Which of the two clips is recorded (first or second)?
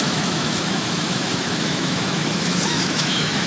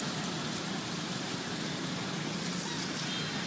second